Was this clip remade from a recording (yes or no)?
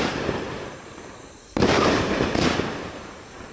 yes